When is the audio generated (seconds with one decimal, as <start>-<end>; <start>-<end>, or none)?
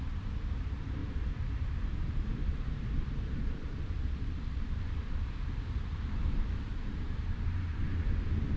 1.0-6.2; 6.7-7.9